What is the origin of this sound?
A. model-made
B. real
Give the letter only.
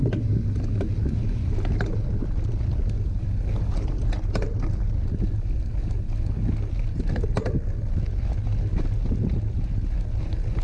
B